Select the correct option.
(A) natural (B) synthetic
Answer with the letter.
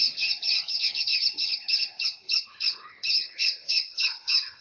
B